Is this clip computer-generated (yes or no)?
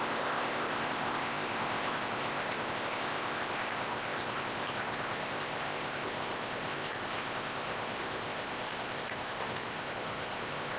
yes